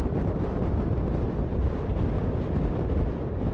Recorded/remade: recorded